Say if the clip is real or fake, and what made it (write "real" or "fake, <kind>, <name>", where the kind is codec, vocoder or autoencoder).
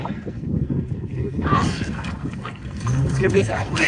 fake, codec, SNAC